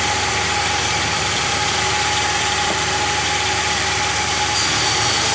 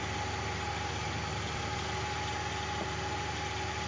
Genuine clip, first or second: second